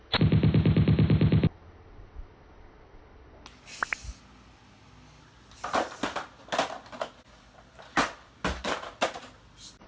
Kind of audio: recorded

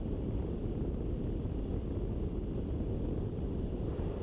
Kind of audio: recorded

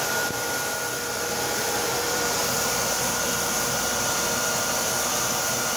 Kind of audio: remade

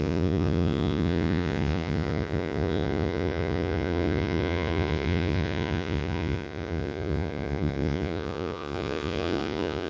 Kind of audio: remade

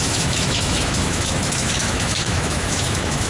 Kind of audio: remade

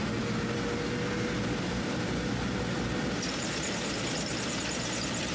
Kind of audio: recorded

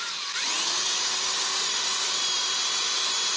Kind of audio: recorded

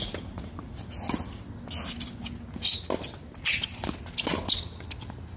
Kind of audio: recorded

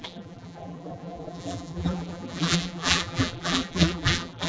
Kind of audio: remade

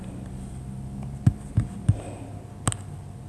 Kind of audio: recorded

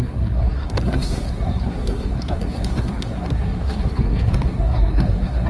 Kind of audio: remade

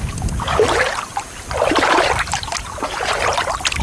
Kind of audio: remade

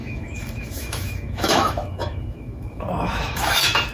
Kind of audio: remade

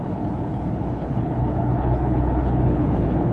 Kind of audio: remade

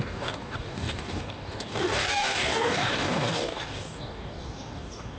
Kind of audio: remade